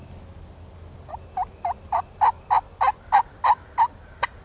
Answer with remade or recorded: recorded